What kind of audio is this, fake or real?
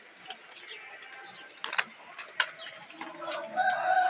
real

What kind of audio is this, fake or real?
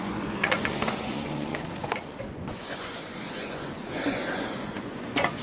fake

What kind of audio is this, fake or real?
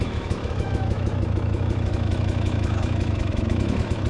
fake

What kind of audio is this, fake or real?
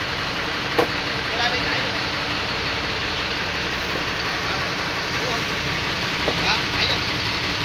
fake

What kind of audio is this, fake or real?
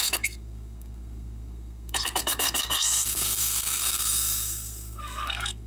fake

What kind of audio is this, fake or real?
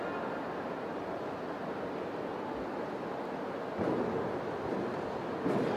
real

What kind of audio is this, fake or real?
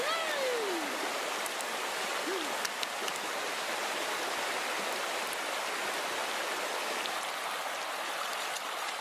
real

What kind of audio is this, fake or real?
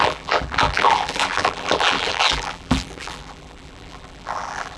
fake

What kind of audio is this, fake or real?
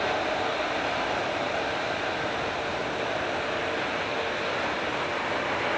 real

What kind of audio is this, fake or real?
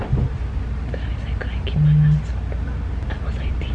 real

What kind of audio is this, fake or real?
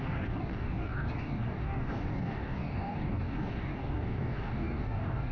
fake